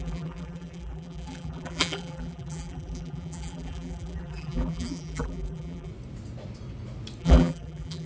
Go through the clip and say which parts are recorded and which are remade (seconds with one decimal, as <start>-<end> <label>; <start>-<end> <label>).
0.0-5.9 remade; 5.9-7.2 recorded; 7.2-8.1 remade